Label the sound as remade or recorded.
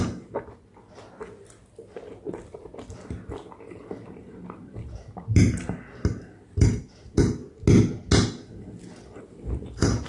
recorded